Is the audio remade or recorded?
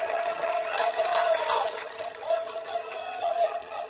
remade